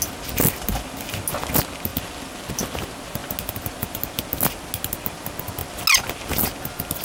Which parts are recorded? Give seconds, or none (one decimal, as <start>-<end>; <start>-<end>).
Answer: 0.0-7.0